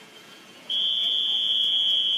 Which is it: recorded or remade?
remade